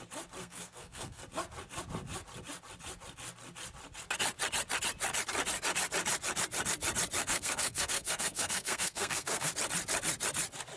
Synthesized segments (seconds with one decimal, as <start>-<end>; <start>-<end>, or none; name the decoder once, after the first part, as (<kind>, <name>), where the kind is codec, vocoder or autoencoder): 0.4-1.2 (codec, SNAC); 7.2-9.5